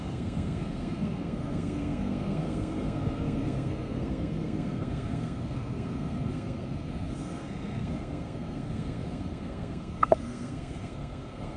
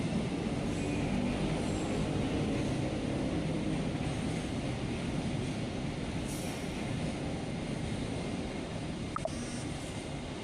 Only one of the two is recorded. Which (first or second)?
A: second